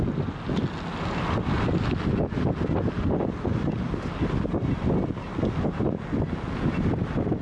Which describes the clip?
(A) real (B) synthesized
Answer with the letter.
A